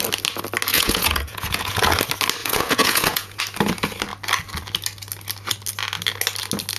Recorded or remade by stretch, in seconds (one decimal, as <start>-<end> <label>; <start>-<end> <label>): 0.0-0.7 recorded; 0.7-1.9 remade; 1.9-2.4 recorded; 2.4-3.4 remade; 3.4-6.8 recorded